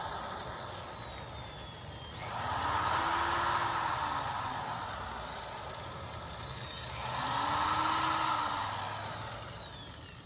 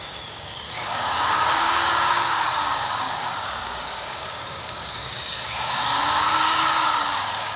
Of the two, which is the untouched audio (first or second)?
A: first